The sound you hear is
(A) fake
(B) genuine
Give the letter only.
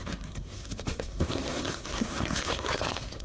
A